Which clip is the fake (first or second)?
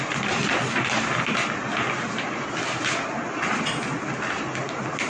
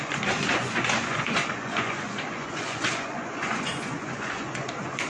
second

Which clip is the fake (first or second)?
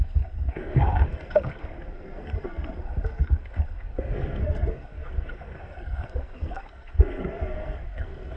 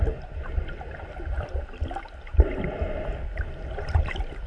first